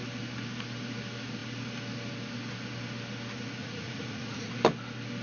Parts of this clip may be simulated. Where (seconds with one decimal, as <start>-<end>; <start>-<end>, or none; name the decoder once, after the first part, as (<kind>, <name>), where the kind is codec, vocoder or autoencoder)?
3.6-4.5 (vocoder, Vocos)